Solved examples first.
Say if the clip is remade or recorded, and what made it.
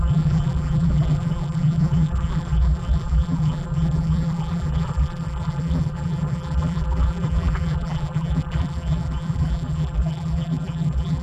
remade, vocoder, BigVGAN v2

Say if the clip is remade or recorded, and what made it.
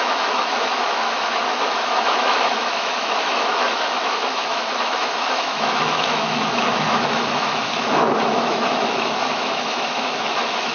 remade, autoencoder, DAC-VAE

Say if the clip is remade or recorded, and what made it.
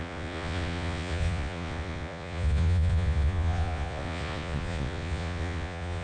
remade, vocoder, Vocos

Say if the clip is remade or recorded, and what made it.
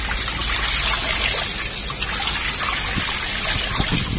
recorded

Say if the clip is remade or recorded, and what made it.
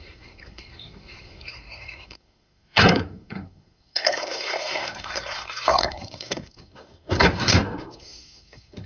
remade, codec, SNAC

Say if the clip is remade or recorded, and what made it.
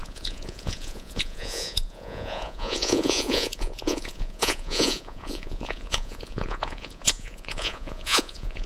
remade, vocoder, Vocos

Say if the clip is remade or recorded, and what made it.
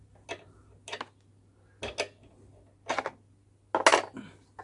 recorded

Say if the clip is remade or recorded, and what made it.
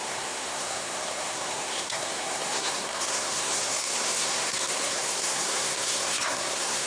remade, codec, SNAC